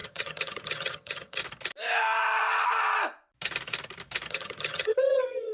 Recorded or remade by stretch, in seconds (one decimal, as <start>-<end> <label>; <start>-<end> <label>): 0.0-1.4 remade; 1.4-4.3 recorded; 4.3-5.5 remade